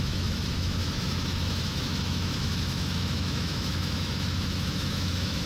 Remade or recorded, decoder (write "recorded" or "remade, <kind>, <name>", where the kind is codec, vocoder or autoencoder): remade, autoencoder, DAC-VAE